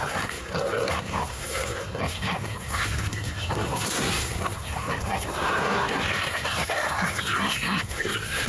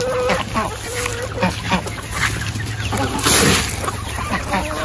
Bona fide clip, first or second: second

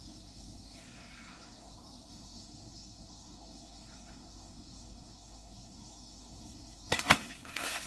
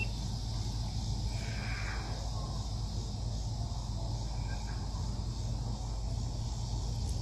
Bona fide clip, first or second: second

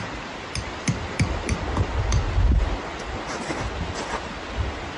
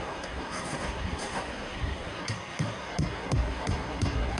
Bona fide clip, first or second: first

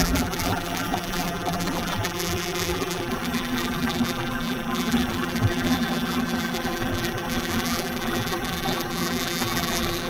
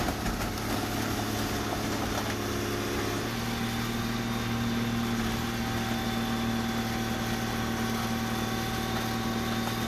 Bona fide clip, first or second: second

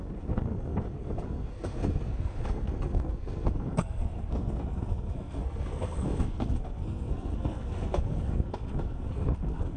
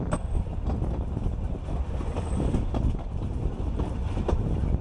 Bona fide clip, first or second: second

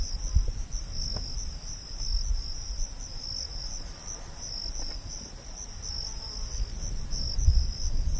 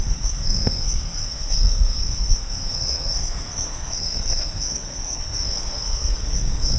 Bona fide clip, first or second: first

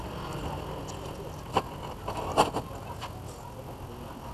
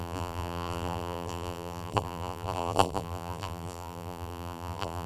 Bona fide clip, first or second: first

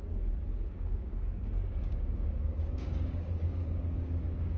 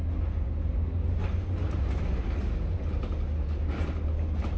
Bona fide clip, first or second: second